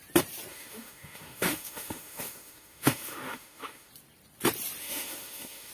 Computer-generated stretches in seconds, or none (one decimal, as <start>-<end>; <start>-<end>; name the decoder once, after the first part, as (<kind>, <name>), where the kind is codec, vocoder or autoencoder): 0.5-3.9 (autoencoder, DAC-VAE); 4.8-5.7